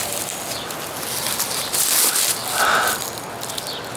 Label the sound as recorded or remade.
recorded